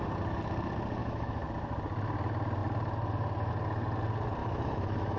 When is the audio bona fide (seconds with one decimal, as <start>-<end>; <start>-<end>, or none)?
0.0-1.0; 1.5-4.4

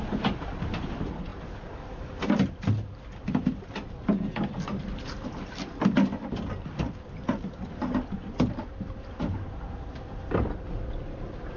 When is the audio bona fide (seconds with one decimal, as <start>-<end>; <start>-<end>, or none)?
0.0-11.6